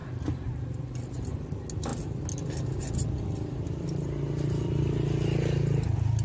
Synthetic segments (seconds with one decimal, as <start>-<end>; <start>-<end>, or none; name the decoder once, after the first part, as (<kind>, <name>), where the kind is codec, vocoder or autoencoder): none